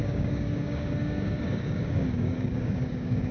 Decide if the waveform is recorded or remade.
remade